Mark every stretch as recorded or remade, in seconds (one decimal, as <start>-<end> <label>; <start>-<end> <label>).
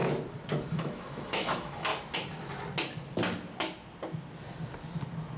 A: 0.0-0.7 recorded; 0.7-1.9 remade; 1.9-5.4 recorded